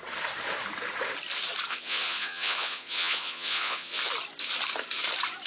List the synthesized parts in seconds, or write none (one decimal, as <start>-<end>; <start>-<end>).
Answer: 1.7-4.0